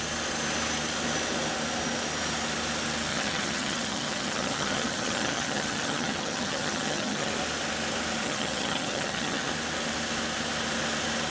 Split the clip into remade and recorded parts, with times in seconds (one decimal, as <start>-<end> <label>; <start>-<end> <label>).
0.0-3.1 recorded; 3.1-7.3 remade; 7.3-8.2 recorded; 8.2-9.5 remade; 9.5-11.3 recorded